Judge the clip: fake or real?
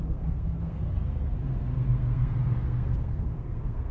fake